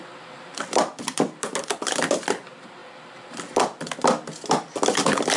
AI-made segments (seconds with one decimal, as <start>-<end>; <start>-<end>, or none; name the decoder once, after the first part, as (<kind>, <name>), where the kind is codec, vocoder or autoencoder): none